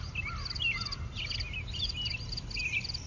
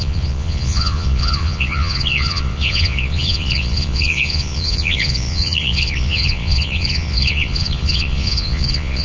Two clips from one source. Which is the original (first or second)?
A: first